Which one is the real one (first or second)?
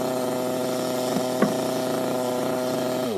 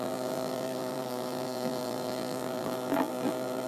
first